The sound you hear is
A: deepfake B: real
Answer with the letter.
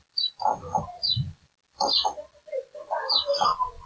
B